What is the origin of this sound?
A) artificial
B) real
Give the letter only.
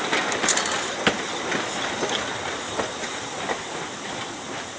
B